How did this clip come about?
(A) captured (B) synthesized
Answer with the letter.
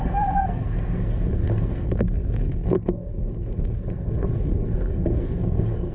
B